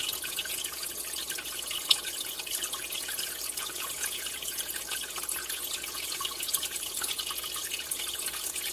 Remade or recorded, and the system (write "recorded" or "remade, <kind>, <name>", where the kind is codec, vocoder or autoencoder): remade, vocoder, Vocos